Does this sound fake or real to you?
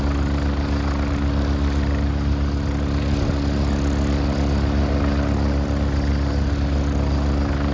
real